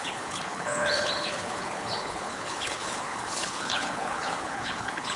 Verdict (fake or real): fake